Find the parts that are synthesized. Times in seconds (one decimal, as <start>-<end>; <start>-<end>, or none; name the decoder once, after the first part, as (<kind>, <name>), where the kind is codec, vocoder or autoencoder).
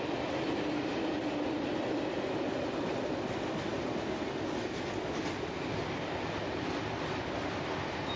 none